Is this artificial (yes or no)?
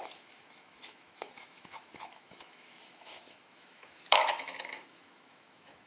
yes